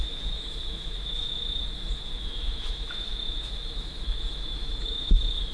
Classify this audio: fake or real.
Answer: fake